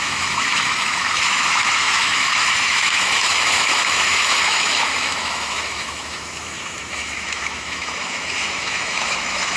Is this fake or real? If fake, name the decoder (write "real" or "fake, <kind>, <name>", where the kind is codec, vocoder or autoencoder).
fake, autoencoder, DAC-VAE